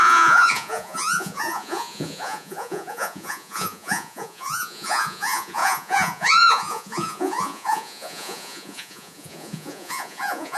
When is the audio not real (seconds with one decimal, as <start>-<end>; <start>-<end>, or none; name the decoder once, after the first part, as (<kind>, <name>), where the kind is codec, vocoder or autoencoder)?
0.0-10.6 (vocoder, Vocos)